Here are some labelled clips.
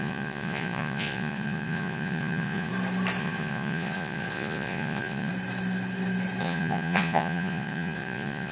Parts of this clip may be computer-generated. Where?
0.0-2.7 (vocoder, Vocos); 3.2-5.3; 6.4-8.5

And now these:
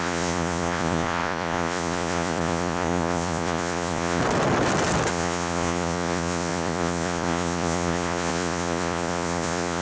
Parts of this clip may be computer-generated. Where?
0.0-4.2 (vocoder, Vocos); 5.1-9.8

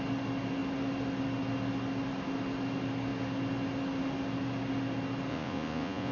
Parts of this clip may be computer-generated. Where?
5.3-6.1 (vocoder, Vocos)

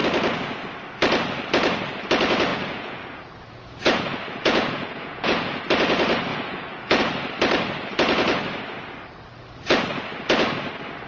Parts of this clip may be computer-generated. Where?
2.5-5.6 (vocoder, Vocos); 6.3-7.0

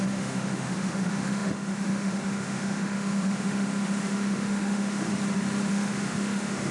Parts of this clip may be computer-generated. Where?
0.0-5.1 (autoencoder, DAC-VAE); 5.7-6.7

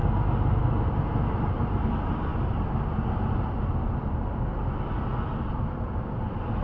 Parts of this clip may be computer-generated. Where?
0.8-2.3 (vocoder, BigVGAN v2); 5.5-6.6

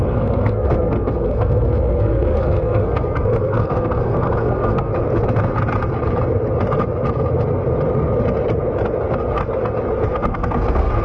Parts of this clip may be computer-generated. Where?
0.0-4.9 (codec, SNAC); 10.1-11.0

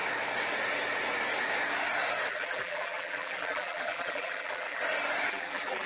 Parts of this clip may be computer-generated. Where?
2.3-4.8 (vocoder, BigVGAN v2); 5.3-5.9